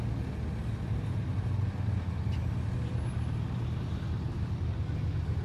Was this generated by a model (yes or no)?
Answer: no